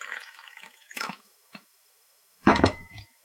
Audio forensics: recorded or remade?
remade